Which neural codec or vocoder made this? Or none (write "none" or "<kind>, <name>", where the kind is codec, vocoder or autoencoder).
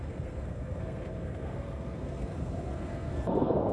codec, SNAC